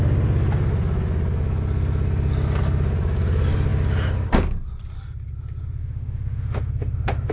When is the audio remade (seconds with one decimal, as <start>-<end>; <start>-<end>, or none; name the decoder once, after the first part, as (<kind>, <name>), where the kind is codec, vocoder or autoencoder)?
5.8-7.3 (autoencoder, DAC-VAE)

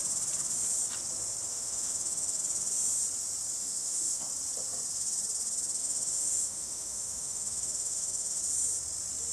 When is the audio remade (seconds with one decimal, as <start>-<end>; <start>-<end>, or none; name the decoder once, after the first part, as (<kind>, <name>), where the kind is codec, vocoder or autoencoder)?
1.5-2.4 (autoencoder, DAC-VAE); 3.6-4.2; 5.8-8.4